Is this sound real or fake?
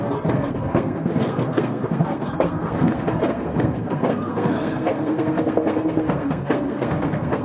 fake